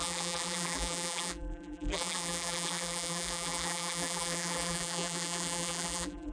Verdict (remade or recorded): remade